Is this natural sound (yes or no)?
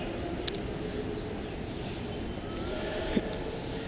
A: yes